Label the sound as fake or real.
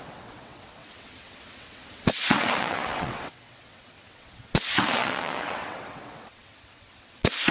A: fake